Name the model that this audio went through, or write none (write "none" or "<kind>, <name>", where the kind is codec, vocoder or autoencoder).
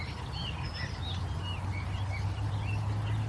none